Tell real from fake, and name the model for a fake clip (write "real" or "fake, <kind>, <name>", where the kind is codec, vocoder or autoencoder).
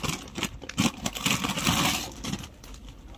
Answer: real